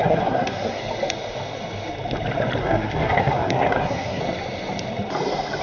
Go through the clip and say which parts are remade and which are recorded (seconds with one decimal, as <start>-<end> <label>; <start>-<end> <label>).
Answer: 0.0-0.8 remade; 0.8-2.6 recorded; 2.6-4.2 remade; 4.2-5.6 recorded